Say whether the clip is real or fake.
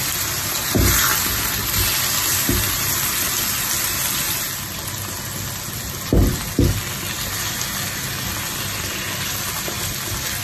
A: real